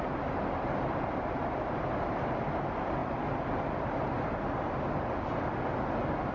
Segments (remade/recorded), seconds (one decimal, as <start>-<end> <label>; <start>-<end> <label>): 0.0-6.3 recorded

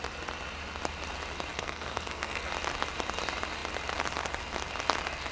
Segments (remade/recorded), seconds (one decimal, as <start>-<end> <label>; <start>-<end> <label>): 0.0-1.5 recorded; 1.5-2.5 remade; 2.5-5.3 recorded

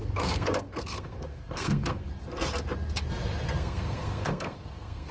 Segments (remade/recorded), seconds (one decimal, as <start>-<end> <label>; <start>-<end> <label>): 0.0-2.1 remade; 2.1-3.6 recorded; 3.6-5.1 remade